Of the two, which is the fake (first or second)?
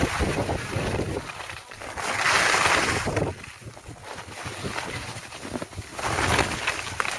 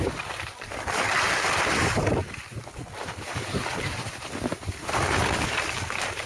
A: second